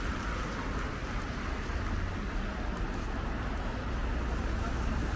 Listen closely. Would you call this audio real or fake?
real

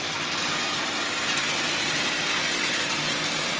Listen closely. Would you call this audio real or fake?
real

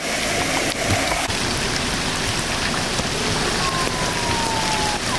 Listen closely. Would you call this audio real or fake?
real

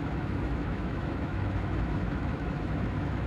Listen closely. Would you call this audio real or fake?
fake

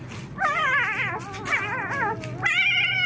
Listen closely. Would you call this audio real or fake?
real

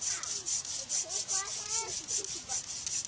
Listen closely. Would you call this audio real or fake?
real